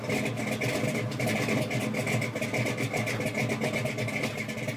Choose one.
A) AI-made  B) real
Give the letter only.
B